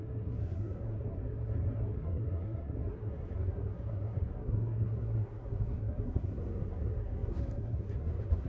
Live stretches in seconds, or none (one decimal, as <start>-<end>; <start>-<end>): none

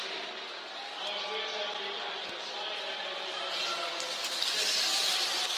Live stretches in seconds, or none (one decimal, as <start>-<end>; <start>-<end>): 0.0-5.6

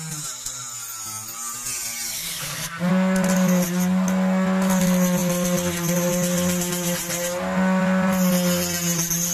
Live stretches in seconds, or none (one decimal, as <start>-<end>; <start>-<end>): 0.0-2.1; 2.9-9.3

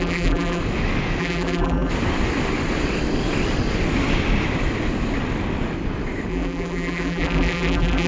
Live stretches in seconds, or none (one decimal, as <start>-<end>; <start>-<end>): 0.6-1.2; 1.9-6.3

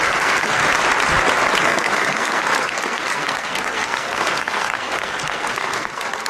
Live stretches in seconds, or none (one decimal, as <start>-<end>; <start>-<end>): 0.6-1.6